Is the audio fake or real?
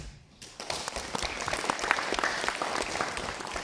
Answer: real